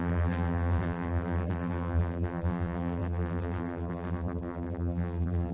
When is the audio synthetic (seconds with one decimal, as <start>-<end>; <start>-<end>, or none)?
0.0-5.5